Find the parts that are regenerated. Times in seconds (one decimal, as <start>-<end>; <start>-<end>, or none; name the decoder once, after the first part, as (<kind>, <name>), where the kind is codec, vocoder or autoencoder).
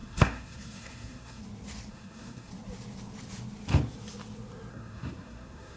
0.0-1.4 (codec, SNAC); 1.9-2.5; 4.7-5.8